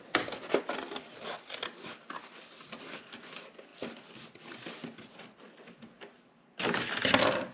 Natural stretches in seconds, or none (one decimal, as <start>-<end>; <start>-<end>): 0.0-7.5